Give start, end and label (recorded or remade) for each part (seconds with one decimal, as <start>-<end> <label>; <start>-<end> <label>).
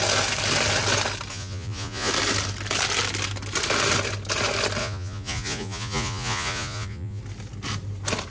0.0-1.3 recorded; 1.3-2.1 remade; 2.1-4.8 recorded; 4.8-7.2 remade; 7.2-8.3 recorded